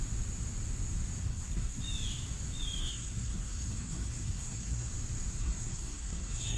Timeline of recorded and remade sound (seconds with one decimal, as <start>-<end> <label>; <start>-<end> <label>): 0.0-1.2 recorded; 1.2-1.8 remade; 1.8-2.8 recorded; 2.8-4.9 remade; 4.9-5.4 recorded; 5.4-6.6 remade